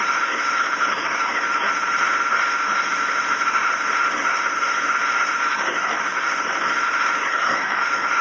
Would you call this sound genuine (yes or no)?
no